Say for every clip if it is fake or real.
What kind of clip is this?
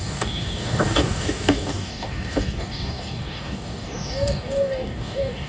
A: fake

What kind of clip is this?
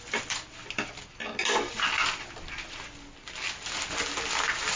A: real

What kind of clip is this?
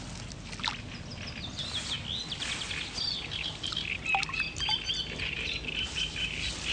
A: real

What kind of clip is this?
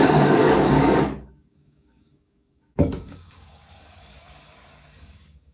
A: fake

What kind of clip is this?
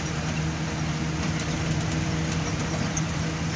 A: real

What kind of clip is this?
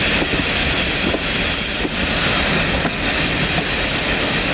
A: real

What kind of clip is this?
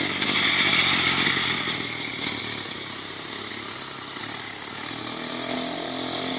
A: real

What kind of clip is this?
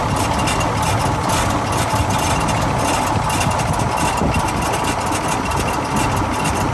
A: real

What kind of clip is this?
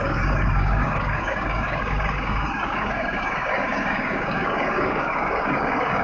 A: fake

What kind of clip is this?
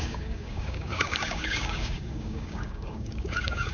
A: fake